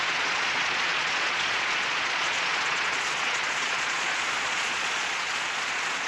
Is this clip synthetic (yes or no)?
yes